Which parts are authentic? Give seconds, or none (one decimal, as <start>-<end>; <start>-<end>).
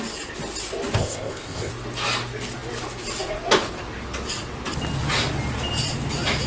0.0-1.0; 1.7-6.5